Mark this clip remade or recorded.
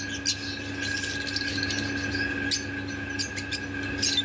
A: recorded